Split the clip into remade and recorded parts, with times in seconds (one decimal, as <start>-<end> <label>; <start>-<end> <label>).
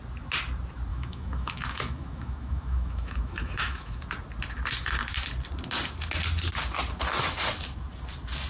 0.0-0.9 recorded; 0.9-4.0 remade; 4.0-8.5 recorded